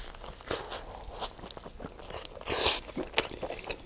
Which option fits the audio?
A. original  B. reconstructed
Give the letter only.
A